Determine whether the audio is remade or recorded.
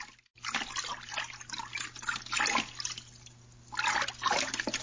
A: recorded